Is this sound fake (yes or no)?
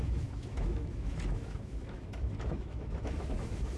yes